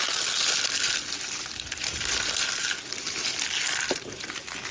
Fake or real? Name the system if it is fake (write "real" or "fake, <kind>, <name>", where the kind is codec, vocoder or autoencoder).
real